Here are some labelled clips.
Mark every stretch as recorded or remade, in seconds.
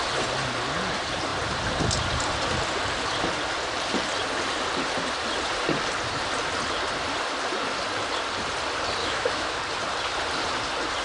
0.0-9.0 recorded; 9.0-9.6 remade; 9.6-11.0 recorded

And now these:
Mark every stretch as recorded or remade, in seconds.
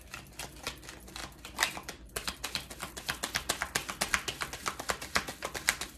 0.0-6.0 recorded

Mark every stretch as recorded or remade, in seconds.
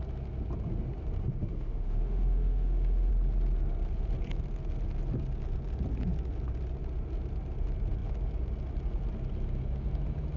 0.0-1.4 recorded; 1.4-3.1 remade; 3.1-10.4 recorded